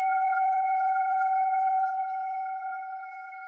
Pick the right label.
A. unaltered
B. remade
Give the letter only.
B